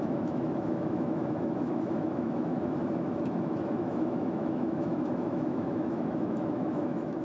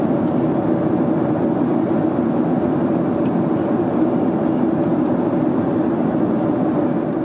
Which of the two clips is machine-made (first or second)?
first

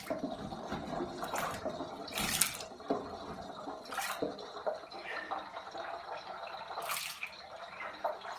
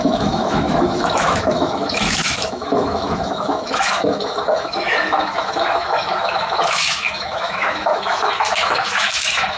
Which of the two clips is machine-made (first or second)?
second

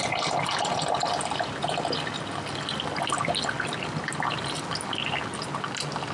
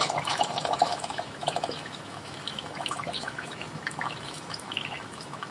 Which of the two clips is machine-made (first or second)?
second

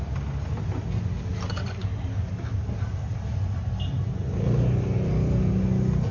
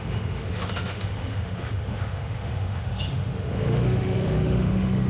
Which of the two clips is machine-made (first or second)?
second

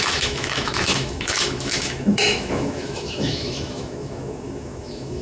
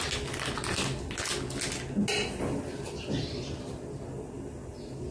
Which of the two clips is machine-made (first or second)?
first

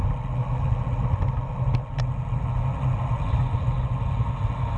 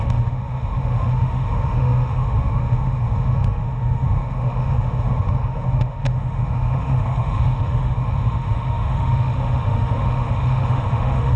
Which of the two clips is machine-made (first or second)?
second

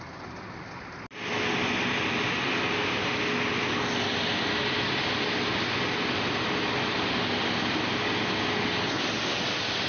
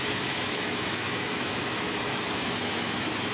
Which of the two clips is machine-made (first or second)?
second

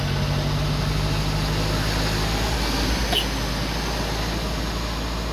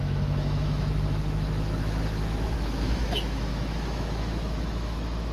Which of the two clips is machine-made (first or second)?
second